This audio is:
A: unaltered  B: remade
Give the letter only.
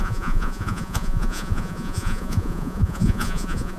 B